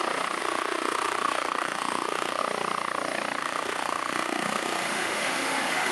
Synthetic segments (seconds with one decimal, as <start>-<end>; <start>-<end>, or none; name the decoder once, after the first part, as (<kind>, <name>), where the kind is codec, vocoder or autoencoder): 0.4-2.4 (autoencoder, DAC-VAE); 3.4-5.9